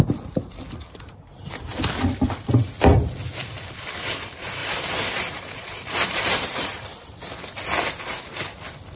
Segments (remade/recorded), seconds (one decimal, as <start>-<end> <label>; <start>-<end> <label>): 0.0-4.6 recorded; 4.6-7.3 remade; 7.3-9.0 recorded